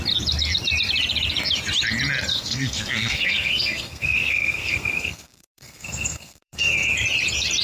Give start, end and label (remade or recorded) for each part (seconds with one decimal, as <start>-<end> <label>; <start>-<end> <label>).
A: 0.0-2.3 recorded; 2.3-6.9 remade; 6.9-7.6 recorded